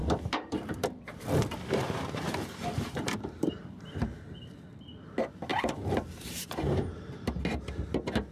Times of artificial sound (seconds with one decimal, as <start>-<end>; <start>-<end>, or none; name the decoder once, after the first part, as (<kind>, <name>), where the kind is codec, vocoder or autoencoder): 0.0-1.0 (vocoder, BigVGAN v2); 2.7-4.2; 5.5-6.8